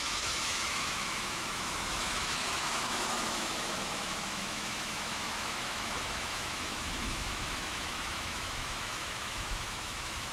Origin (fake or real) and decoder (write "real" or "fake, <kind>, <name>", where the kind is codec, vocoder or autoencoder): fake, autoencoder, DAC-VAE